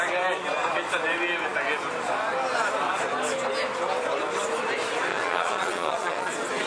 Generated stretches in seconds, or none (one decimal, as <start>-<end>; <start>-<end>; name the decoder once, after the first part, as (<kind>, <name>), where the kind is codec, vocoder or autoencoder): 5.1-6.3 (vocoder, Vocos)